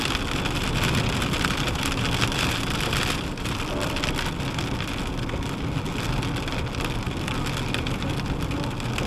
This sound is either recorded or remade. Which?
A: recorded